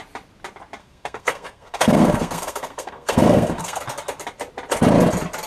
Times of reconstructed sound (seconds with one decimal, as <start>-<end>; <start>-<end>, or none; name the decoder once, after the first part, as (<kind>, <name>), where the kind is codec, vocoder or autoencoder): 0.8-3.8 (codec, SNAC)